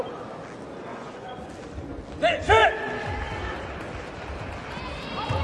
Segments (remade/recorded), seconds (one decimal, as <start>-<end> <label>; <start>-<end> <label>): 0.0-0.9 recorded; 0.9-1.5 remade; 1.5-5.4 recorded